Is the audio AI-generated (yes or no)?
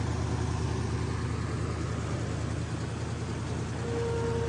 no